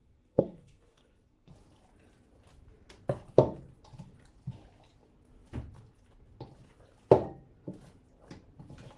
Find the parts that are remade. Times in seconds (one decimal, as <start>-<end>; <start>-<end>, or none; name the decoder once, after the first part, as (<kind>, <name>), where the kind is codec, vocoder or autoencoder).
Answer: 0.0-1.5 (codec, SNAC)